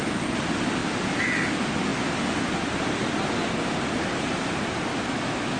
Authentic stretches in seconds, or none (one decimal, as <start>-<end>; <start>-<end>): 0.0-4.9